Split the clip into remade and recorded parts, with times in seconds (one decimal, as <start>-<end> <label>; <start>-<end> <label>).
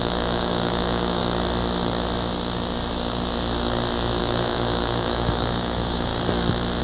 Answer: 0.0-1.2 remade; 1.2-4.2 recorded; 4.2-6.1 remade; 6.1-6.8 recorded